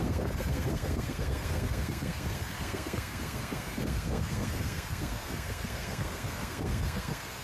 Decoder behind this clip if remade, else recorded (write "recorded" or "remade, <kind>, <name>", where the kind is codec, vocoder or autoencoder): remade, codec, SNAC